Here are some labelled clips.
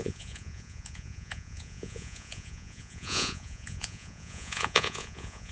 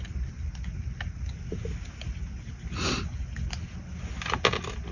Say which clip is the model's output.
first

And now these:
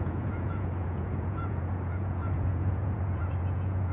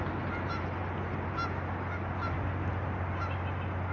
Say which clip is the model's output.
first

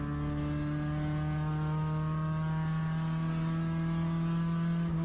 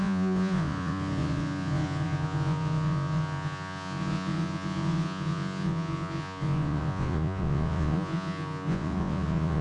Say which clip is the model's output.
second